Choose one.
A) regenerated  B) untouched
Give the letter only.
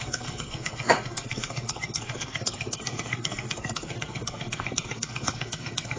A